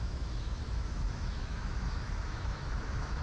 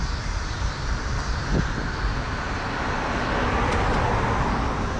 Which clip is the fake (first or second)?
first